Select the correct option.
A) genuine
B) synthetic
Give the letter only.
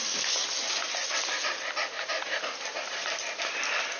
A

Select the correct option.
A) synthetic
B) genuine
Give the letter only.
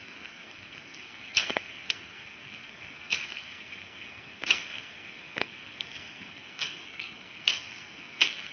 A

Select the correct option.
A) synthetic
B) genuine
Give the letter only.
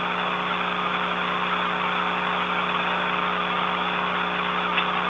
B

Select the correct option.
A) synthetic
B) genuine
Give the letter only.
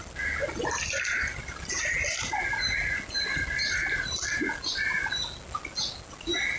B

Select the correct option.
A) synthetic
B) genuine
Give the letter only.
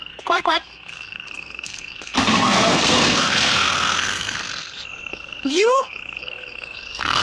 A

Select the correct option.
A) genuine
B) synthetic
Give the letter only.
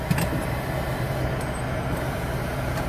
A